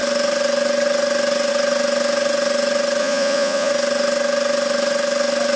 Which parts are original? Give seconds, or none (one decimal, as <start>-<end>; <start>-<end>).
0.0-3.0; 3.7-5.6